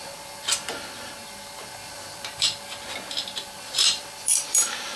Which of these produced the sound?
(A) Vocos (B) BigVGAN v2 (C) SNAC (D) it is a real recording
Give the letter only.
B